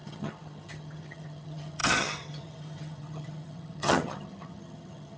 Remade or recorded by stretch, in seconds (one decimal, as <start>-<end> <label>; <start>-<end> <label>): 0.0-5.2 remade